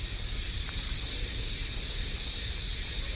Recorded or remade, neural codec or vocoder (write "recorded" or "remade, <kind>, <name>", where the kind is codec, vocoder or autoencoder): recorded